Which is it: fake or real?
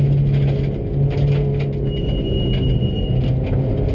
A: real